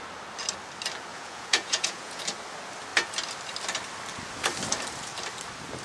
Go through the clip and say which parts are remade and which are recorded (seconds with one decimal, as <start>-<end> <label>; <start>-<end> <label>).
0.0-1.1 recorded; 1.1-2.2 remade; 2.2-5.8 recorded